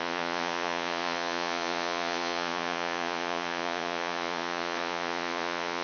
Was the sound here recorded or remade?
remade